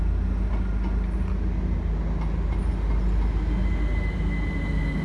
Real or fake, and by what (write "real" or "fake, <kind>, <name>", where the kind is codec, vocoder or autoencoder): real